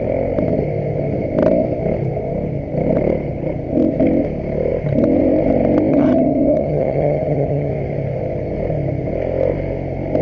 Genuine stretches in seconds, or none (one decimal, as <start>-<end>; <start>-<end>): 0.0-5.9; 7.7-10.2